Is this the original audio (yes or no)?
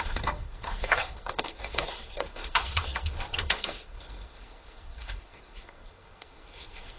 no